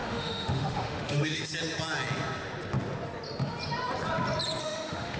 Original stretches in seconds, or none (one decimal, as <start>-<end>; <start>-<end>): 1.5-4.6

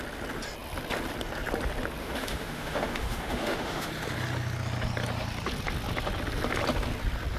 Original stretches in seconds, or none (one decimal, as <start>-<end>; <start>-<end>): 0.0-2.0; 3.9-7.4

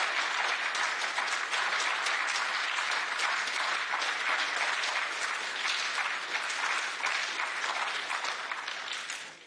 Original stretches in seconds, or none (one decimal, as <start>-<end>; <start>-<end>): 0.0-9.5

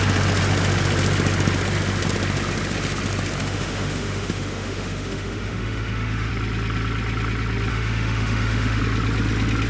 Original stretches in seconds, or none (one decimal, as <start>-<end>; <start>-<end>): 0.0-3.4; 6.3-7.7; 8.8-9.7